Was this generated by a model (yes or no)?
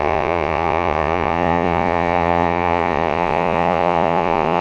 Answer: yes